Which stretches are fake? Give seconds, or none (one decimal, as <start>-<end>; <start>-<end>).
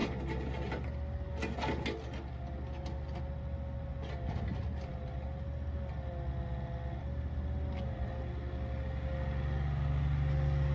none